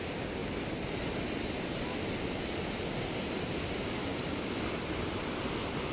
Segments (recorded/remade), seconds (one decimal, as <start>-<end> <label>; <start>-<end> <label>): 0.0-5.9 recorded